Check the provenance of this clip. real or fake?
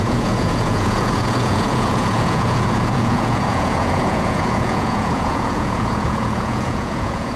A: fake